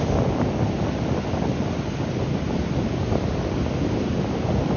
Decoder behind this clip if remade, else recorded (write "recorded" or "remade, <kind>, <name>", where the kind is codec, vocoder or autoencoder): recorded